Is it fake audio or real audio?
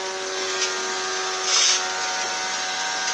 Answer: real